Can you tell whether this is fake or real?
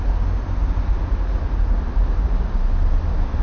real